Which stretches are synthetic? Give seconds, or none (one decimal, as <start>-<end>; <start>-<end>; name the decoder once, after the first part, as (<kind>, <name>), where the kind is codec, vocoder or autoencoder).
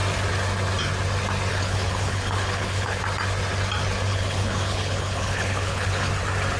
1.5-3.0 (codec, HILCodec); 4.1-6.1